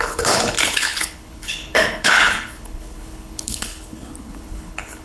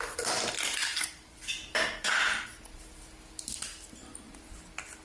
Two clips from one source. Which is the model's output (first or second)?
first